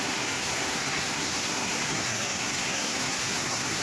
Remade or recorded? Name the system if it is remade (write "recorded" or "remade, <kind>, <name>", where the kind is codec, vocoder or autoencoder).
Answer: remade, codec, SNAC